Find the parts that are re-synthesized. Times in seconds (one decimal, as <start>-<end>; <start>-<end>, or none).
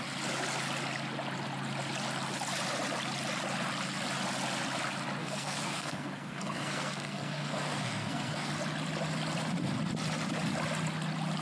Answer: 5.2-8.5